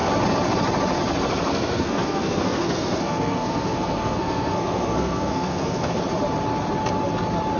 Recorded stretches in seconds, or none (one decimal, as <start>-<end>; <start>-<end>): 0.0-1.5; 6.0-7.6